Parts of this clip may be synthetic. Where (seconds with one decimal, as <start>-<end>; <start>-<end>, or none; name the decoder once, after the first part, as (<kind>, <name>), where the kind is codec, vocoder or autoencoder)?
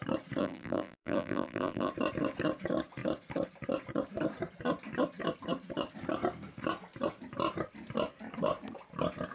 0.4-1.9 (vocoder, BigVGAN v2)